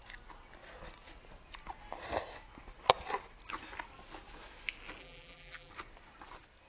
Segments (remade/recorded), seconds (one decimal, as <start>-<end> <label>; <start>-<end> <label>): 0.0-5.0 recorded; 5.0-5.7 remade; 5.7-6.7 recorded